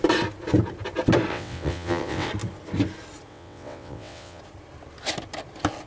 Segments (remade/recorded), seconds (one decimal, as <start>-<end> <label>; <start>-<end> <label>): 0.0-1.3 recorded; 1.3-2.3 remade; 2.3-3.3 recorded; 3.3-4.4 remade; 4.4-5.9 recorded